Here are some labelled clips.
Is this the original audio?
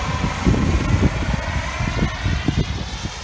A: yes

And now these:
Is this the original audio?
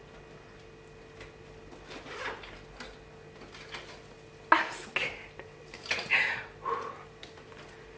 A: yes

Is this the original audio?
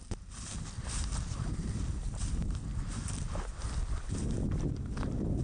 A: yes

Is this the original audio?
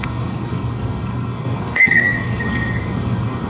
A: no